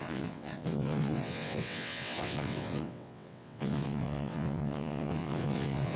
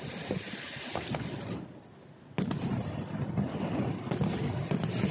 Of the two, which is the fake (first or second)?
first